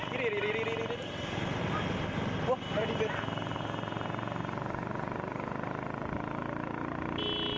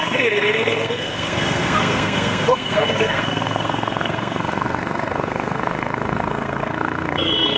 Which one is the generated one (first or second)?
second